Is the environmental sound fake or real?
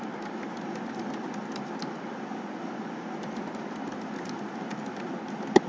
real